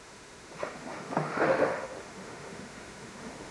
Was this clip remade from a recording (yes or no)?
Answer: yes